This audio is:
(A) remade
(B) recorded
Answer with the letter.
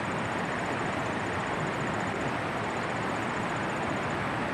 B